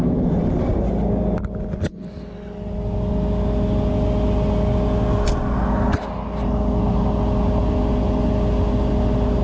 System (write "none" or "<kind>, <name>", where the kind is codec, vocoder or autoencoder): none